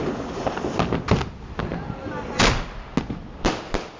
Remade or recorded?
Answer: recorded